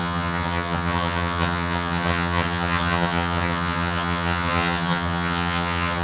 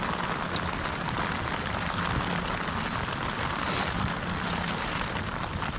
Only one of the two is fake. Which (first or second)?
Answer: first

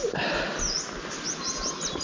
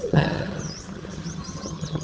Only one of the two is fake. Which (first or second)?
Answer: second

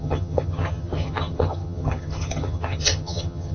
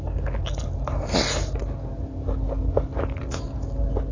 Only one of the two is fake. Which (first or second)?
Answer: first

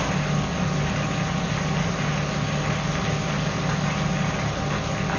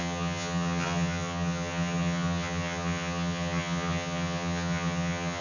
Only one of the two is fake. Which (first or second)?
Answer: second